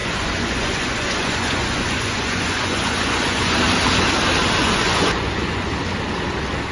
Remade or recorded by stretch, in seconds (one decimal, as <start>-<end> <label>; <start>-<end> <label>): 0.0-3.6 remade; 3.6-4.6 recorded; 4.6-5.7 remade; 5.7-6.7 recorded